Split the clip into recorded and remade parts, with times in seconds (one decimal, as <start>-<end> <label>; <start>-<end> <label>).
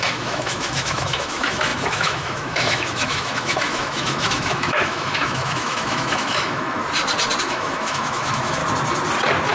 0.0-6.8 remade; 6.8-7.4 recorded; 7.4-8.6 remade; 8.6-9.5 recorded